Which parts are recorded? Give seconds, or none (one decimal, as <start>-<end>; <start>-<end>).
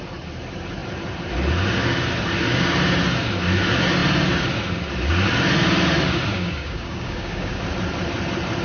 0.0-6.3; 7.6-8.6